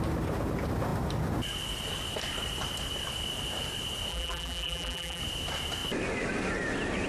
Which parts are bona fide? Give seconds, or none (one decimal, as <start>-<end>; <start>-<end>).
0.0-4.1; 5.2-7.1